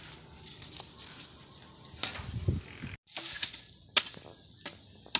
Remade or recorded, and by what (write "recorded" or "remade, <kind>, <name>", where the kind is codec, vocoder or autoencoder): recorded